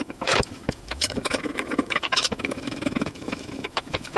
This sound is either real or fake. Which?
fake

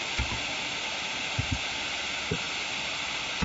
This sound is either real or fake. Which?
real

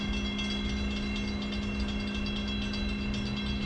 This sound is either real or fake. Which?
real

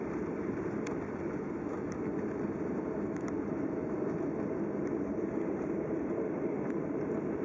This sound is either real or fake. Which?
real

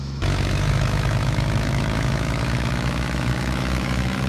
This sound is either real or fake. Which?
fake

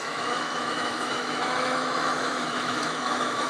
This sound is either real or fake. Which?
fake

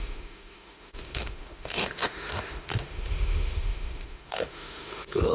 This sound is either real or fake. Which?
fake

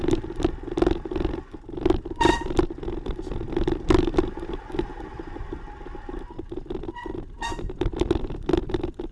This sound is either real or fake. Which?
real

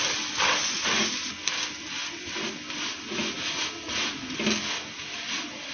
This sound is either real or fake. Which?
real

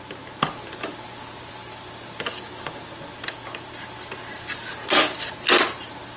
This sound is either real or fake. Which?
real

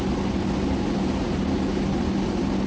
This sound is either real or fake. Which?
real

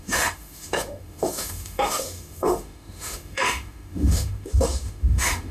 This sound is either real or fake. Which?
fake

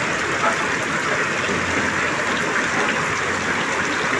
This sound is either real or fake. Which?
real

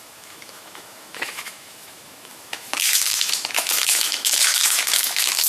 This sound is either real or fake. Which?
fake